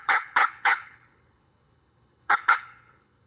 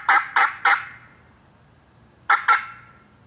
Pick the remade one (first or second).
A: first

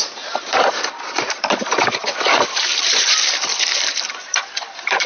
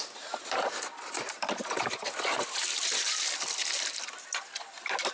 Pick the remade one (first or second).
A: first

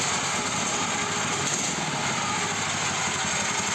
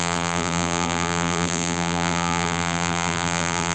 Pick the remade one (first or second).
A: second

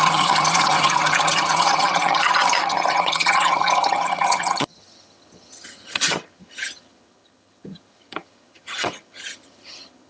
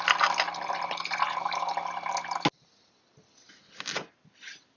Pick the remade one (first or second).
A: first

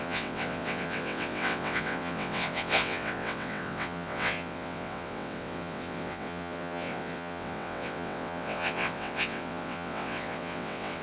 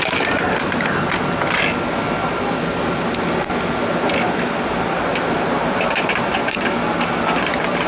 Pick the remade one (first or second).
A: first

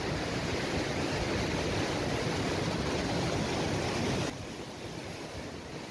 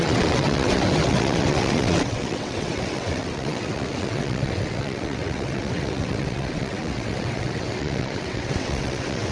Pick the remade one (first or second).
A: second